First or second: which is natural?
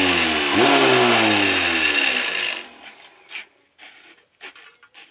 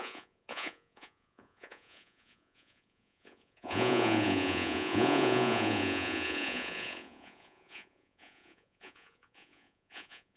first